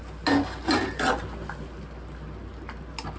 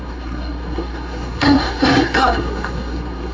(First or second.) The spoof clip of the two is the second